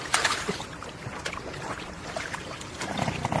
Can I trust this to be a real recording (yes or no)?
yes